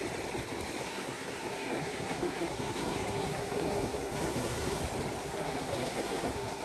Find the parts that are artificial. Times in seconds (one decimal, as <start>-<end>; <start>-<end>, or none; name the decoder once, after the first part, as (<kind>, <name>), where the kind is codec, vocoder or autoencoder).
0.8-4.8 (codec, SNAC); 5.2-6.6